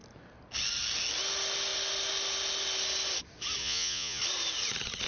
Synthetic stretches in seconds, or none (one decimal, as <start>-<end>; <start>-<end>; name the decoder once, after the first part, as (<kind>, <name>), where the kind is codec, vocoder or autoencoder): 3.6-4.2 (vocoder, Vocos)

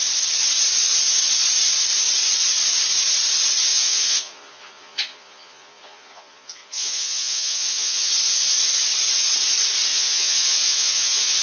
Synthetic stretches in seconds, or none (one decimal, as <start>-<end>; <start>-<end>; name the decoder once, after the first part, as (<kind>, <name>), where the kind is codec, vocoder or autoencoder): 3.7-8.1 (vocoder, Vocos); 9.9-11.4

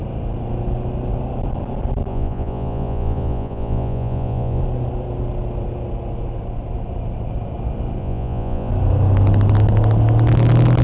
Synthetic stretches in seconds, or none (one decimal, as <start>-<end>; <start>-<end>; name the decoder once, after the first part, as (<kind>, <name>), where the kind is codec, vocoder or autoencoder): 2.1-4.6 (vocoder, Vocos); 8.0-8.7

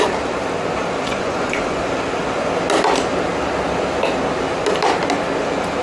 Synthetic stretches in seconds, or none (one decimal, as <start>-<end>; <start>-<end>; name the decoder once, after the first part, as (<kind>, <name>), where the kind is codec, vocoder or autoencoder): 1.0-1.8 (vocoder, Vocos)